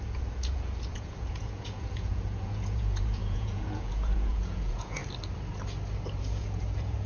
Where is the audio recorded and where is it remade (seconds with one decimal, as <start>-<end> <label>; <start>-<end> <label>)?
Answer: 0.0-5.0 remade; 5.0-6.2 recorded; 6.2-7.1 remade